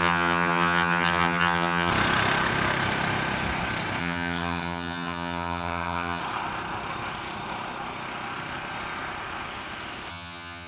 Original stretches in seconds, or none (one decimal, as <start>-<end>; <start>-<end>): 1.9-4.0; 6.2-10.1